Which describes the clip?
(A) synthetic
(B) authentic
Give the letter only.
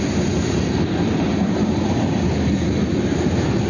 B